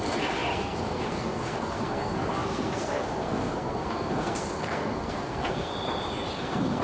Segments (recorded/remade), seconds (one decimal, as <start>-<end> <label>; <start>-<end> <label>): 0.0-5.7 remade; 5.7-6.3 recorded; 6.3-6.8 remade